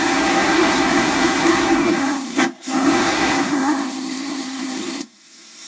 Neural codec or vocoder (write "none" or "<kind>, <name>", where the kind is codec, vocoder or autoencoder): codec, SNAC